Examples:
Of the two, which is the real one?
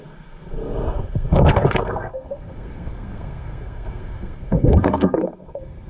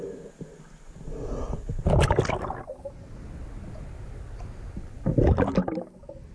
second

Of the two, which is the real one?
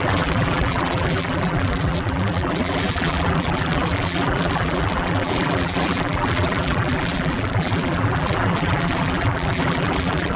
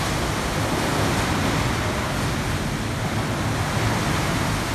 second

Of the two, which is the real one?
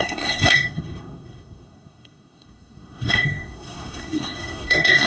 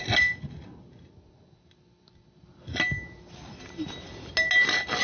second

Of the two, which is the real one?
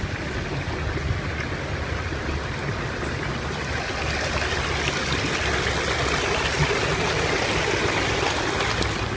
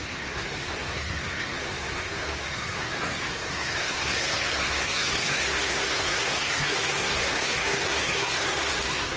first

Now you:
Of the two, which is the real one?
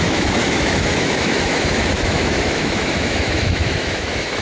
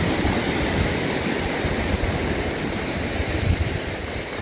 second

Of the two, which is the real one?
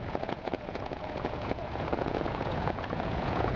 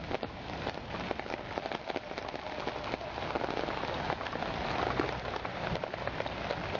second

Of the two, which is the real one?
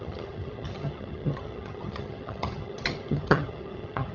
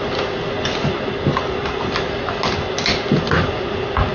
second